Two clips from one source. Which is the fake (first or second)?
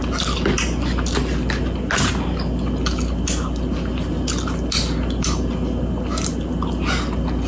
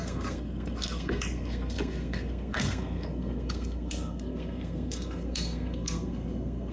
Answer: second